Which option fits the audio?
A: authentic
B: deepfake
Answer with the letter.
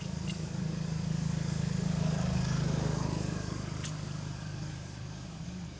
B